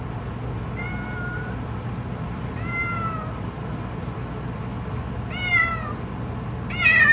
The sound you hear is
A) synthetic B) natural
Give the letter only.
B